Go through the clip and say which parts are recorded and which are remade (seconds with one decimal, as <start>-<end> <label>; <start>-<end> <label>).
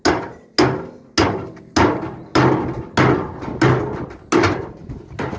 0.0-5.4 recorded